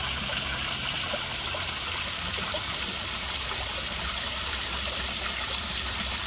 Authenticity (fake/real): fake